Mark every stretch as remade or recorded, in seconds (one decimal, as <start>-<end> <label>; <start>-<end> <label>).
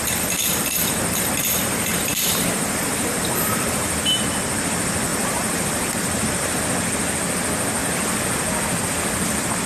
0.0-0.5 recorded; 0.5-1.3 remade; 1.3-2.1 recorded; 2.1-4.2 remade; 4.2-5.1 recorded; 5.1-6.6 remade; 6.6-9.7 recorded